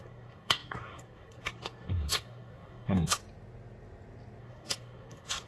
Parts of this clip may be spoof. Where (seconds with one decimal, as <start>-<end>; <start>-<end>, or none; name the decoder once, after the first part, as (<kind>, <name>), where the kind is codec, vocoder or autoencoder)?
0.0-3.2 (codec, SNAC); 4.4-5.5